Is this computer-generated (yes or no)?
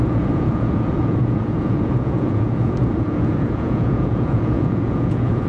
yes